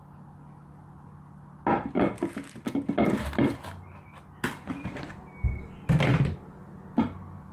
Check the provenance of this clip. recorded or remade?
recorded